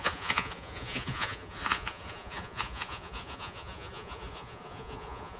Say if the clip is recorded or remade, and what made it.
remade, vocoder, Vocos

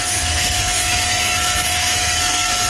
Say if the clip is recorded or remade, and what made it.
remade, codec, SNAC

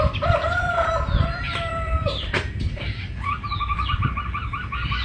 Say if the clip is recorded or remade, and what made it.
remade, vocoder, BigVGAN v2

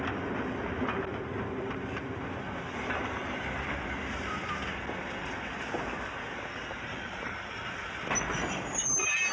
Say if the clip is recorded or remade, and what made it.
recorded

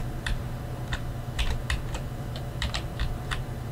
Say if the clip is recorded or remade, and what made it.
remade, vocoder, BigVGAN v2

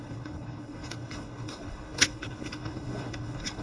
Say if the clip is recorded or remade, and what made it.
remade, codec, HILCodec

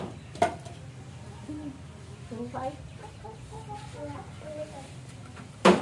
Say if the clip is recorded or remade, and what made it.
recorded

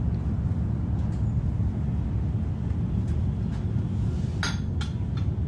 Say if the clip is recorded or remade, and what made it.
recorded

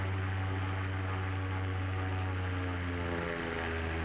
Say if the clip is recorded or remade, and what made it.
recorded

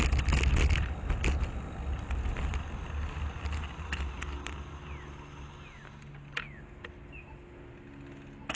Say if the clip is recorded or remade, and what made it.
recorded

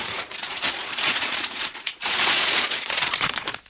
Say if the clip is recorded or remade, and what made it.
remade, vocoder, Vocos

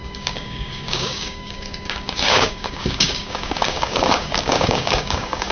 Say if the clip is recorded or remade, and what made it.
remade, codec, DAC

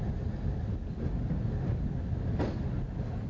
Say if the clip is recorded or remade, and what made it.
recorded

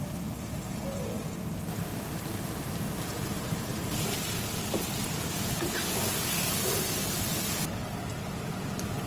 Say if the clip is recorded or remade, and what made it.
remade, vocoder, BigVGAN v2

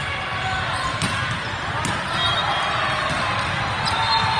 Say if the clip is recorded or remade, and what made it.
recorded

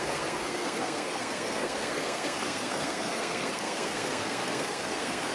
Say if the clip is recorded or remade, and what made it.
remade, codec, SNAC